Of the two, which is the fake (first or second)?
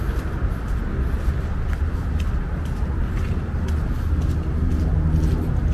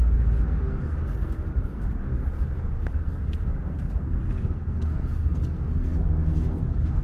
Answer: second